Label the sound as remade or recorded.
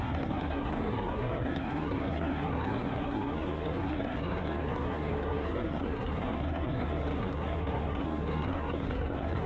remade